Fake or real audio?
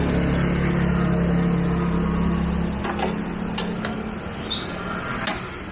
real